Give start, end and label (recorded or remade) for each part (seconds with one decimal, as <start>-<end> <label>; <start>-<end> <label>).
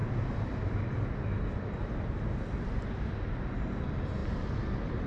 0.0-4.2 recorded; 4.2-5.1 remade